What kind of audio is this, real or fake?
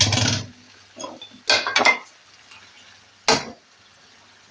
real